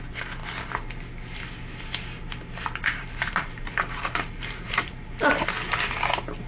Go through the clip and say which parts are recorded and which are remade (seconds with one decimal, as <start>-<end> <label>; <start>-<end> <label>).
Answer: 0.0-2.8 recorded; 2.8-5.3 remade; 5.3-6.5 recorded